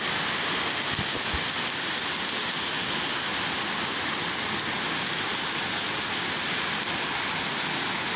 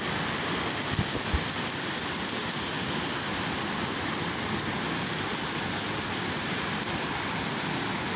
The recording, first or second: first